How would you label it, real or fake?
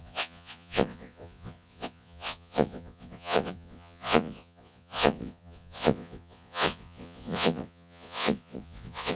fake